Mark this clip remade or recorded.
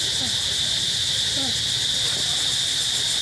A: recorded